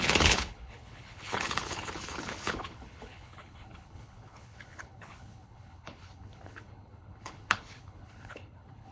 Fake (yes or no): yes